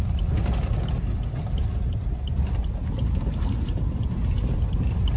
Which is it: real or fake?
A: real